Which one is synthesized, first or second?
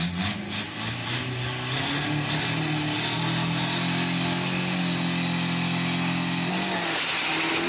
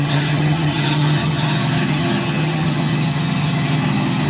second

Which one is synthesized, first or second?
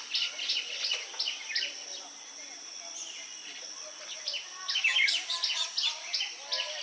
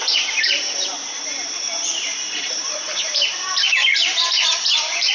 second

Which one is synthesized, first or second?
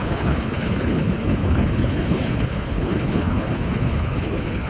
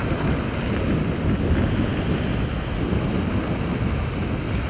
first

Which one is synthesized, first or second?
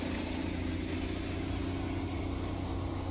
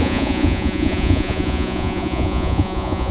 second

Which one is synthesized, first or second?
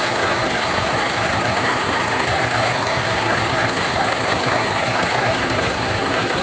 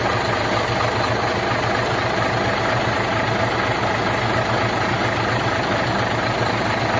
first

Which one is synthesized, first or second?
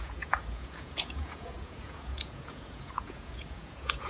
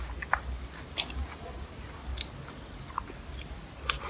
first